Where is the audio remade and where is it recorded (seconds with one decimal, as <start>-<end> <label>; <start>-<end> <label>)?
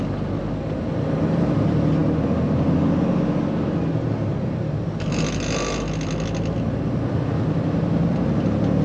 0.0-8.8 recorded